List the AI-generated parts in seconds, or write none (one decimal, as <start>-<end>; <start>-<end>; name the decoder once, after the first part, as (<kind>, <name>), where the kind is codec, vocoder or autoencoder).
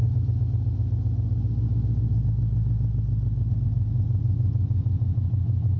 3.5-3.9 (codec, SNAC)